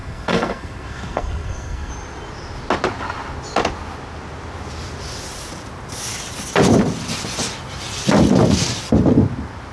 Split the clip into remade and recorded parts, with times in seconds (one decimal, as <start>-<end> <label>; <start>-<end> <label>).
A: 0.0-1.9 remade; 1.9-9.7 recorded